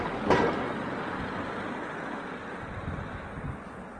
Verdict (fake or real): real